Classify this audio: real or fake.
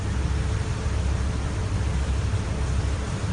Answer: real